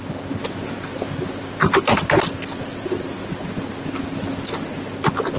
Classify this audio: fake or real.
real